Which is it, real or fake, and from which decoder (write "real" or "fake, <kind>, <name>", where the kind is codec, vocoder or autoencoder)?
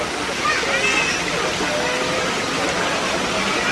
real